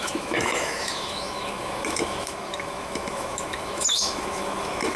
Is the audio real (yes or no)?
no